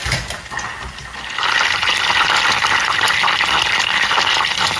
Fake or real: real